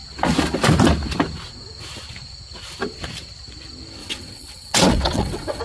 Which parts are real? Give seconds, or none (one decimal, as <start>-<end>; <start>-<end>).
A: 0.0-4.0